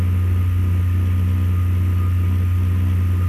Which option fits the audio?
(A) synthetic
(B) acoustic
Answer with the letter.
B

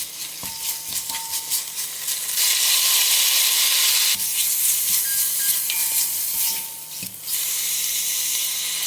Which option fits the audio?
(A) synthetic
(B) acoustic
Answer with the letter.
B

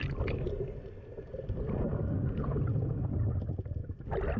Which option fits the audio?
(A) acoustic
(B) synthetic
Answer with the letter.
A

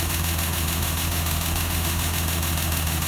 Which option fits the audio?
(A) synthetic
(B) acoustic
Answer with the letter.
A